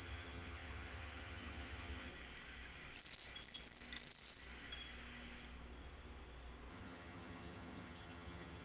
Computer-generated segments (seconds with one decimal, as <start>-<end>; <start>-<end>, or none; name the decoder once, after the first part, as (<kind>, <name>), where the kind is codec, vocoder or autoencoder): 0.0-2.1 (vocoder, HiFi-GAN); 6.7-8.6